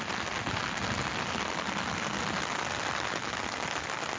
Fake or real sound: real